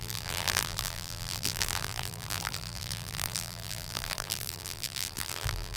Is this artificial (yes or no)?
yes